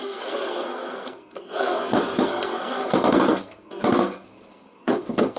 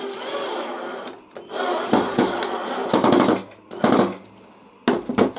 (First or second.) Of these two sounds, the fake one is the first